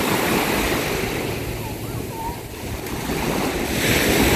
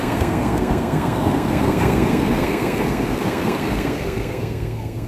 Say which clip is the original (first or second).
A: first